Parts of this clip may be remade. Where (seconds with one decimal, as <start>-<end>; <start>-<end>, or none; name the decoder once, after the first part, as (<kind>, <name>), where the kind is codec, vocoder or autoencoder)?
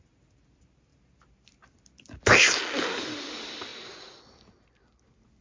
3.7-4.2 (vocoder, Vocos)